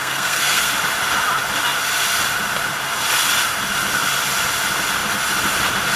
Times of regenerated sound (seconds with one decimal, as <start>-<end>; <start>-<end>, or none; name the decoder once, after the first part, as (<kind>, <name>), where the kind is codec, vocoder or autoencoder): 0.0-0.7 (codec, SNAC)

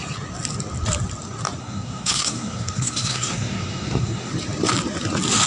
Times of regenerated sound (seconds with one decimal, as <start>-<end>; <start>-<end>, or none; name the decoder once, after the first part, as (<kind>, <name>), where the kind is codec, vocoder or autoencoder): 1.6-4.3 (codec, SNAC)

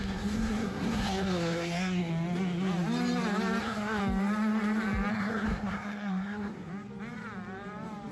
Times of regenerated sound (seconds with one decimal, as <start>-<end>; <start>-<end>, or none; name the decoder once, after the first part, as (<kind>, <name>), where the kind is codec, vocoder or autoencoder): 0.0-2.1 (codec, SNAC); 3.6-4.0; 5.1-6.7